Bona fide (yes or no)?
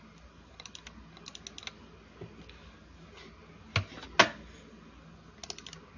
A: yes